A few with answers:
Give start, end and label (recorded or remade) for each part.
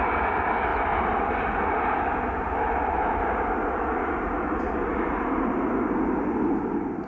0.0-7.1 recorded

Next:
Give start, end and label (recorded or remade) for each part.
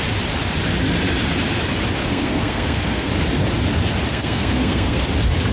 0.0-2.0 recorded; 2.0-3.1 remade; 3.1-4.1 recorded; 4.1-5.0 remade; 5.0-5.5 recorded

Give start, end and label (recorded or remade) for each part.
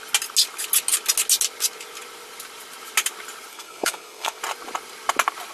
0.0-3.5 recorded; 3.5-4.4 remade; 4.4-5.5 recorded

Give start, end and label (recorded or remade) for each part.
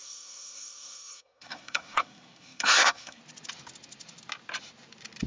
0.0-3.2 remade; 3.2-5.3 recorded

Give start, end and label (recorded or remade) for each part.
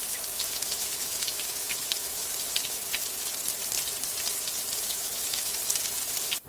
0.0-2.8 remade; 2.8-4.7 recorded; 4.7-5.6 remade; 5.6-6.5 recorded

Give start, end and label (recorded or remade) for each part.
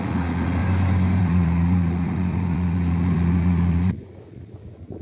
0.0-0.6 remade; 0.6-1.2 recorded; 1.2-5.0 remade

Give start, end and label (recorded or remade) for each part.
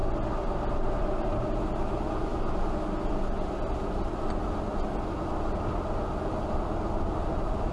0.0-7.7 recorded